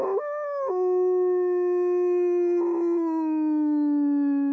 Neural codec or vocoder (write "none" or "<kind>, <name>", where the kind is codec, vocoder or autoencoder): none